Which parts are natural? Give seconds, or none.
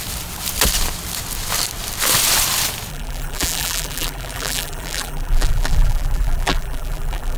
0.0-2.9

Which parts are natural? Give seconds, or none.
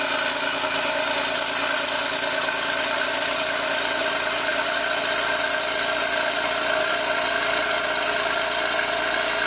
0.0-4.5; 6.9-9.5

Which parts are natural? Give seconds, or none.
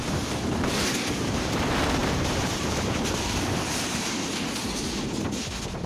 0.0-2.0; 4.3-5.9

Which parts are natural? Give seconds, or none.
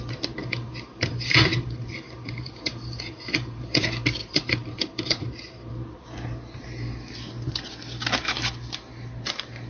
0.0-0.4; 3.8-4.2; 5.7-9.7